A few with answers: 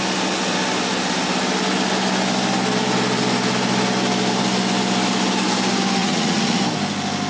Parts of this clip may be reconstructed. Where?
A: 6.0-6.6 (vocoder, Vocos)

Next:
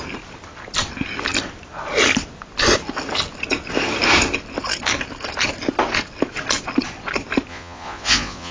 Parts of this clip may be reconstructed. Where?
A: 7.5-8.5 (vocoder, Vocos)

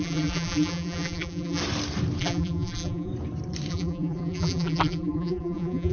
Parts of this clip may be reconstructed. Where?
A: 0.0-1.6 (vocoder, BigVGAN v2); 2.2-3.1; 3.7-5.9

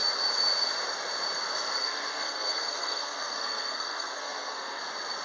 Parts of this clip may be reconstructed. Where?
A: 1.7-4.8 (codec, SNAC)

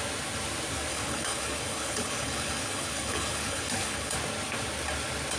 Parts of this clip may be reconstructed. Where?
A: 0.9-4.1 (codec, HILCodec)

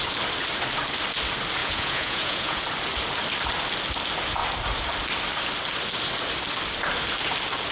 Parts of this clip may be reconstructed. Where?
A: 1.6-2.6 (vocoder, Vocos)